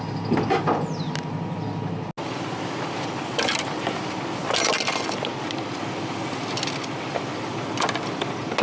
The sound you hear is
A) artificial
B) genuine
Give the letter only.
B